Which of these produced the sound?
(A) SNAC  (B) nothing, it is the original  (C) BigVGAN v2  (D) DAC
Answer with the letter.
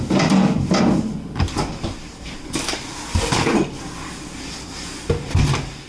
B